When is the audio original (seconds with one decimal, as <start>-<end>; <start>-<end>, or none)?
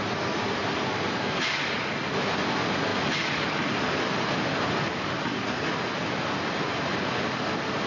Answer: 0.0-0.6; 1.4-7.9